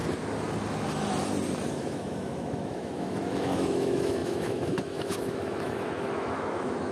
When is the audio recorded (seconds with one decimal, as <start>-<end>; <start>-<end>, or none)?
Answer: 0.0-1.7